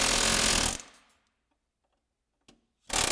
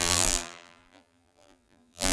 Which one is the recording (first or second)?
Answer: first